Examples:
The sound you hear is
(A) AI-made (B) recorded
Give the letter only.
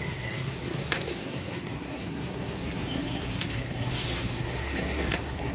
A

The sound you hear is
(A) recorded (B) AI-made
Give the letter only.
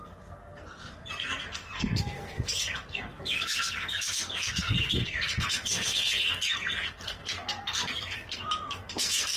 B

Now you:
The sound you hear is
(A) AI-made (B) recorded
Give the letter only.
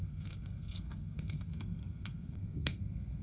A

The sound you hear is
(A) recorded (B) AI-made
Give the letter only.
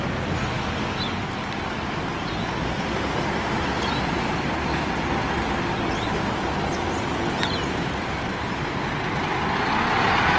A